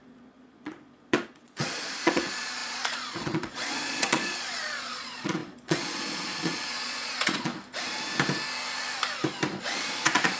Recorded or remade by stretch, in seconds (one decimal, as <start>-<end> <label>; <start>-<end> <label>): 0.0-7.5 remade; 7.5-9.6 recorded; 9.6-10.4 remade